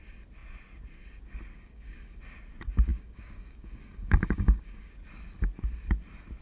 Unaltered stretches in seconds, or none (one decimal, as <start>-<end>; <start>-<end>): 0.0-1.5; 2.2-2.9; 4.9-6.4